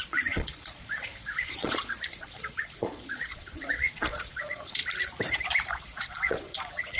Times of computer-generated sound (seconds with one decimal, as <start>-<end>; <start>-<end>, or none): 0.0-4.8; 5.7-7.0